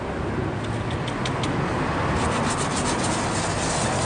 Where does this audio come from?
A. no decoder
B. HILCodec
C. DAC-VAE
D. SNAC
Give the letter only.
A